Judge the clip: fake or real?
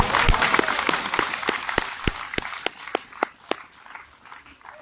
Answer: real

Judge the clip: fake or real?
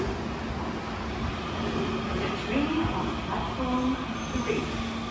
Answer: real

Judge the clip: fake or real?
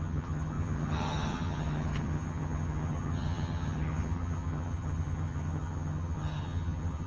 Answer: fake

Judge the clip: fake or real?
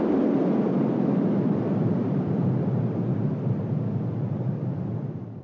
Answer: fake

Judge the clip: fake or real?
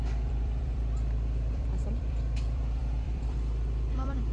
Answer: fake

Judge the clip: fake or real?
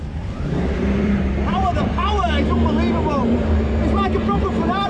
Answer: fake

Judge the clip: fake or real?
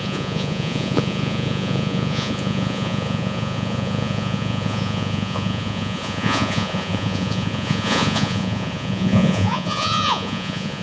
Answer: fake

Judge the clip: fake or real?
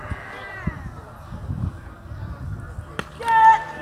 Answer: real